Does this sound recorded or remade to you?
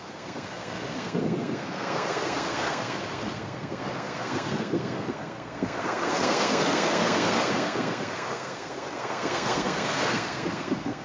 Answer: remade